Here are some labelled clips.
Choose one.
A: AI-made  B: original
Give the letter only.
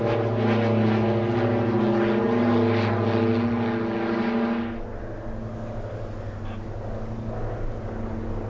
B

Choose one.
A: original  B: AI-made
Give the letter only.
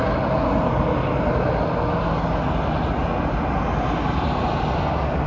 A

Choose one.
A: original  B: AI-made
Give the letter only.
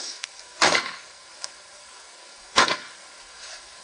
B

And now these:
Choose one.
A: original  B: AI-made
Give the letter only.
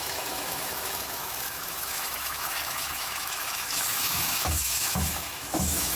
B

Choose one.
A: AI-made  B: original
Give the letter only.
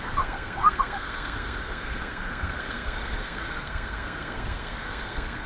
A